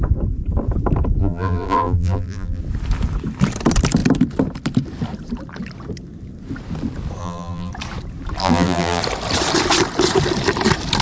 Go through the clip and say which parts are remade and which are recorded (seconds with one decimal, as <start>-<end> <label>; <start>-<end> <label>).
0.0-1.2 recorded; 1.2-2.6 remade; 2.6-7.2 recorded; 7.2-7.7 remade; 7.7-8.4 recorded; 8.4-9.0 remade; 9.0-11.0 recorded

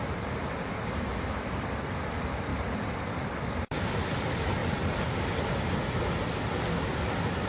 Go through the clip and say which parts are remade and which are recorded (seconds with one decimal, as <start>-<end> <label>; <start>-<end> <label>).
0.0-7.5 recorded

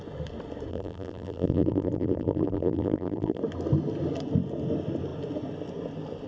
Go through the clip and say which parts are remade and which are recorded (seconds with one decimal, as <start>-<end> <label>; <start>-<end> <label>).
0.0-0.7 recorded; 0.7-3.4 remade; 3.4-6.3 recorded

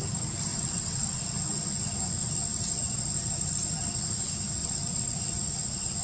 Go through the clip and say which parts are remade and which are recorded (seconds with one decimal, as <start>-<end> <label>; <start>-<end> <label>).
0.0-0.5 recorded; 0.5-1.2 remade; 1.2-4.6 recorded; 4.6-5.2 remade; 5.2-6.0 recorded

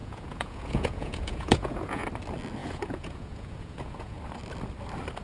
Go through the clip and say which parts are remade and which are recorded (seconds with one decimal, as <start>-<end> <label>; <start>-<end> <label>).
0.0-2.1 remade; 2.1-2.6 recorded; 2.6-4.2 remade; 4.2-5.2 recorded

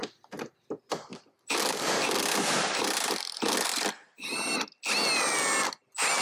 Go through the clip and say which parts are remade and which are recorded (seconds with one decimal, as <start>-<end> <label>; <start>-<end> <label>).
0.0-0.5 remade; 0.5-1.1 recorded; 1.1-3.1 remade; 3.1-3.7 recorded; 3.7-4.5 remade; 4.5-6.2 recorded